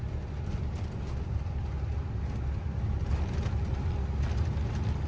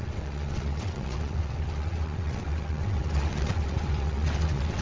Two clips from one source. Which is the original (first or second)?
first